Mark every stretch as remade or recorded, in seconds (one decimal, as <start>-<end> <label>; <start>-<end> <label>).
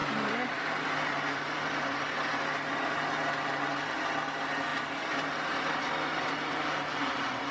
0.0-0.7 remade; 0.7-7.5 recorded